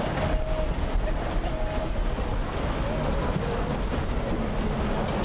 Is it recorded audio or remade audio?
recorded